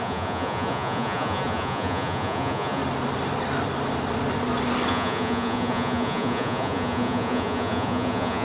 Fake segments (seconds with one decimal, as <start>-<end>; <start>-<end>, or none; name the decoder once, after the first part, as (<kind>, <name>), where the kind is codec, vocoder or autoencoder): 0.0-2.8 (vocoder, Vocos); 4.9-8.4